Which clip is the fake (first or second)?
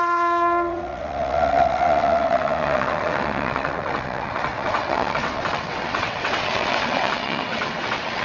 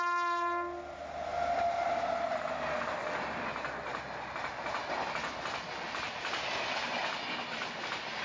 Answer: first